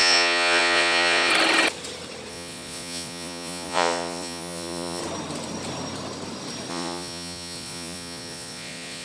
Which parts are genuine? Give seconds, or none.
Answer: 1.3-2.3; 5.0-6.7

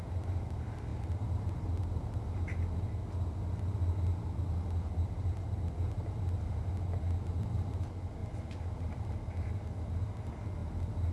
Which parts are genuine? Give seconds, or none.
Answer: 0.0-0.9; 1.8-8.2; 9.5-11.1